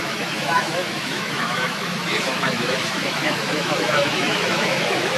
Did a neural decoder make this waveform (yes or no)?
yes